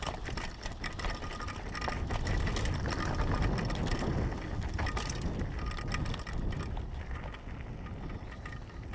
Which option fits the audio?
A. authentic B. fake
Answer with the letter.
A